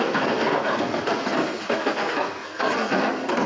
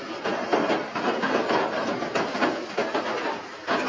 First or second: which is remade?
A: first